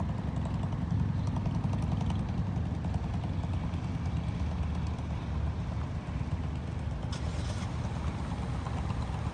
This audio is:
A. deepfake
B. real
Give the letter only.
B